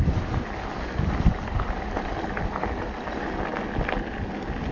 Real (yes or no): yes